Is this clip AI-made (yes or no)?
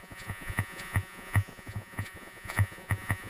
yes